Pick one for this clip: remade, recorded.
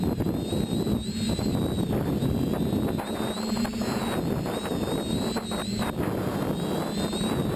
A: recorded